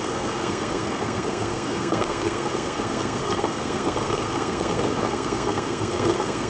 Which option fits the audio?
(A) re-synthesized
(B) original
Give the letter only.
A